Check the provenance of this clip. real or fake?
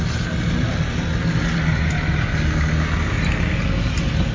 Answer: real